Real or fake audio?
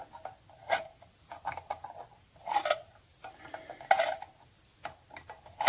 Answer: real